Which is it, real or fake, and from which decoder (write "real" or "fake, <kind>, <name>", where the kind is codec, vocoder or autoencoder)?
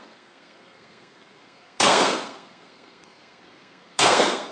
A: fake, codec, SNAC